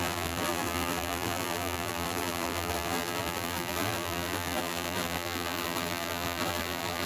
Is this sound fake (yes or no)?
yes